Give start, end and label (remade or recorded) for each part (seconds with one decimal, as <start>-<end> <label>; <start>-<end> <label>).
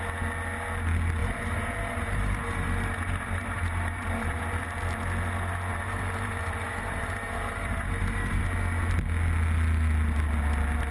0.0-1.2 recorded; 1.2-4.4 remade; 4.4-5.7 recorded; 5.7-8.4 remade; 8.4-10.9 recorded